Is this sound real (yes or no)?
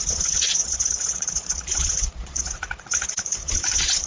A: no